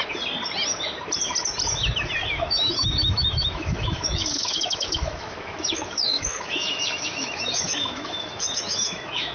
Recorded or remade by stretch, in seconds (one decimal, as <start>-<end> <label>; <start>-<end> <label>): 0.0-2.3 recorded; 2.3-9.3 remade